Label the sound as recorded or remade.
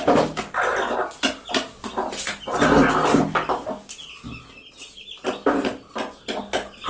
recorded